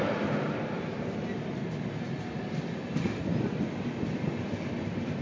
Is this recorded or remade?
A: recorded